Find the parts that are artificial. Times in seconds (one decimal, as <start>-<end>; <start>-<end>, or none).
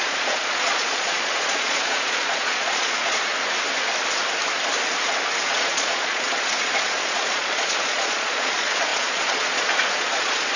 0.0-3.3; 5.5-10.6